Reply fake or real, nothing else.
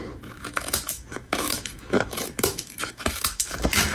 fake